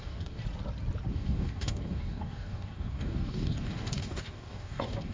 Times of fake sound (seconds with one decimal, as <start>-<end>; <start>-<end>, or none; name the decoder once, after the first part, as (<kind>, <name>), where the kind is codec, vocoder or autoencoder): 0.0-0.4 (codec, DAC); 1.1-5.1